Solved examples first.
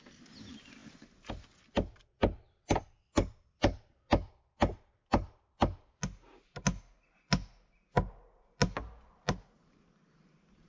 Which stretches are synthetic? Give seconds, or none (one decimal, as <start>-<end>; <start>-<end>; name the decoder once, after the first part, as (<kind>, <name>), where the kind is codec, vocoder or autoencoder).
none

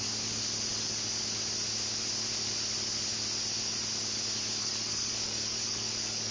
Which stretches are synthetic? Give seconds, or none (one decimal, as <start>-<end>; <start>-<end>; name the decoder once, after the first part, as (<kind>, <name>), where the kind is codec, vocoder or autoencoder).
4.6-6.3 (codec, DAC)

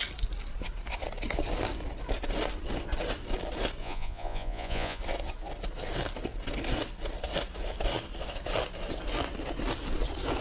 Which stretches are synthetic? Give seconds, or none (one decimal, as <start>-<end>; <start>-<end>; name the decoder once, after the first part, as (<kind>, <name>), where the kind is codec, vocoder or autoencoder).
3.8-5.0 (vocoder, Vocos)

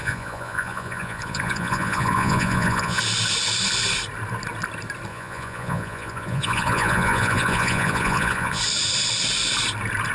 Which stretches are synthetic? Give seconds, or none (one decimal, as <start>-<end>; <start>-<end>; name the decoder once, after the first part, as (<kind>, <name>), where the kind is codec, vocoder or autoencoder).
0.0-3.0 (vocoder, Vocos); 5.1-8.6

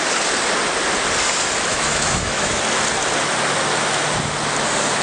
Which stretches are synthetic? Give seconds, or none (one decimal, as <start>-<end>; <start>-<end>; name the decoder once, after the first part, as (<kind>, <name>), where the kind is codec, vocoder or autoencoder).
1.7-2.6 (autoencoder, DAC-VAE)

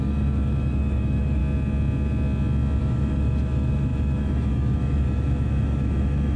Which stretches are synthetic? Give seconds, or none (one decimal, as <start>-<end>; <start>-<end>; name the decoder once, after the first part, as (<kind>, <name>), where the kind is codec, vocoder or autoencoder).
0.0-1.4 (autoencoder, DAC-VAE); 2.8-6.4

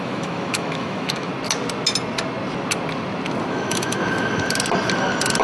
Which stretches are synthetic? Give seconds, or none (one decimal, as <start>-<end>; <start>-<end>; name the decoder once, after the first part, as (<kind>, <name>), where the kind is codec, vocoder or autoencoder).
0.0-1.3 (autoencoder, DAC-VAE); 3.5-4.0

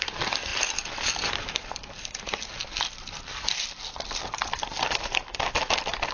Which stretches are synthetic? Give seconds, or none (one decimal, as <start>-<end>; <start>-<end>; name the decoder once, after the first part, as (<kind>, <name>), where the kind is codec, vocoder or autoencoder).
0.0-0.5 (vocoder, BigVGAN v2); 2.9-6.1